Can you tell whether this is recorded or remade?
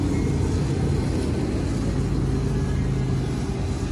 recorded